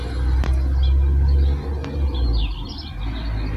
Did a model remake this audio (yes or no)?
no